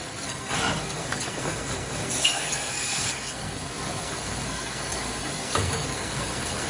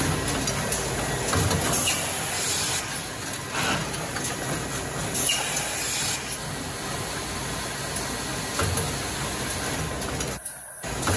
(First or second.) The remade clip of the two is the first